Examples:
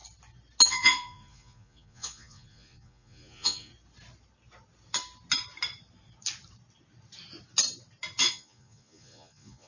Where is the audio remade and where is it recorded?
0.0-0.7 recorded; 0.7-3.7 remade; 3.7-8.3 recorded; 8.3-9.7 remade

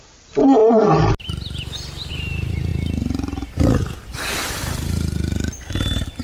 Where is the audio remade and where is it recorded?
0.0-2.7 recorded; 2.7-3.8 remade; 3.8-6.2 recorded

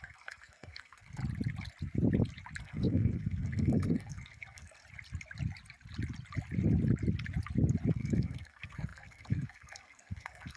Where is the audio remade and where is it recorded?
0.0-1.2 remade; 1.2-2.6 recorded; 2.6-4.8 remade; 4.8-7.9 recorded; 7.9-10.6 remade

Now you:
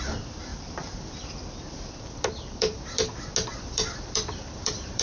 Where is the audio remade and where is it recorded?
0.0-3.0 remade; 3.0-3.6 recorded; 3.6-5.0 remade

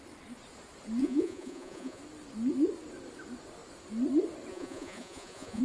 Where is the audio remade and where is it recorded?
0.0-1.0 recorded; 1.0-2.0 remade; 2.0-4.5 recorded; 4.5-5.6 remade